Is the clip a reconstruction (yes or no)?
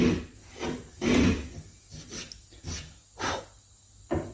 no